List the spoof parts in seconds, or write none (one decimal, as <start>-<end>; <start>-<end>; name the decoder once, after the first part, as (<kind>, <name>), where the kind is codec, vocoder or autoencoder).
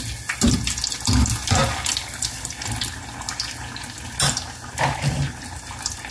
none